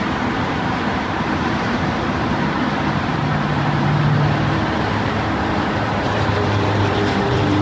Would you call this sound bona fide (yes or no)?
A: no